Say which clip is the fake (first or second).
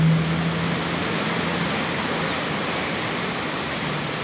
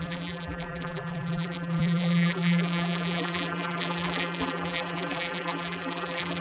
second